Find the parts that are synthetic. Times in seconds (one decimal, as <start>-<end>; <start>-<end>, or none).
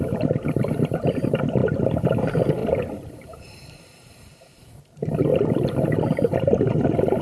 0.0-1.6; 2.2-2.6; 3.1-5.3